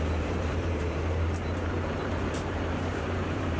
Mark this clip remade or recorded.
remade